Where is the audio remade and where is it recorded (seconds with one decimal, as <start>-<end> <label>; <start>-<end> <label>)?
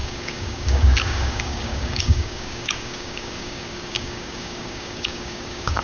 0.0-5.8 remade